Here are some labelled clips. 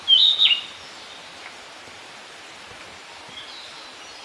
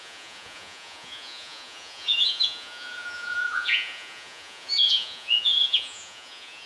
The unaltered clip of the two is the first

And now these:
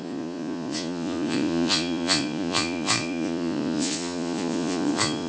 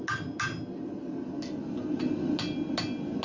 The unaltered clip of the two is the second